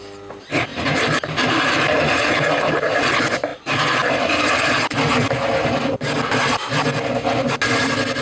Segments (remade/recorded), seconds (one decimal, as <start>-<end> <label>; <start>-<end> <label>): 0.0-8.2 recorded